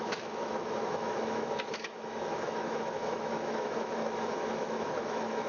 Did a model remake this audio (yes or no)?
yes